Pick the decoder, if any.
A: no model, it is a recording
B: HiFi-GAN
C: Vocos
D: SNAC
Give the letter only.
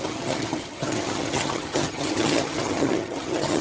B